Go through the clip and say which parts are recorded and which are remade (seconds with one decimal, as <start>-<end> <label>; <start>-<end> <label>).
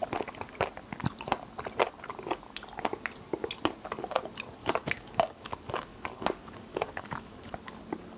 0.0-4.6 recorded; 4.6-7.5 remade; 7.5-8.2 recorded